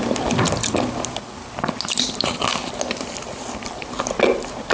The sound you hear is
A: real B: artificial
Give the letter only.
A